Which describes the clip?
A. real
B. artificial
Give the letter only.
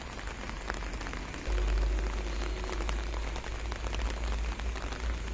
A